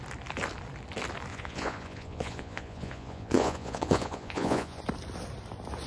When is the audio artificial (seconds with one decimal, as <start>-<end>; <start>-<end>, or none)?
1.3-4.8